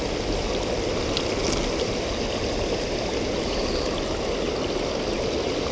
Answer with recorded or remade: recorded